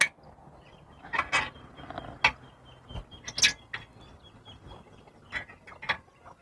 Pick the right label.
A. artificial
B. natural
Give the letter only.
B